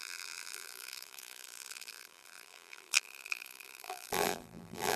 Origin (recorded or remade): remade